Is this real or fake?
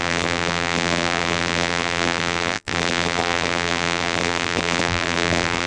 fake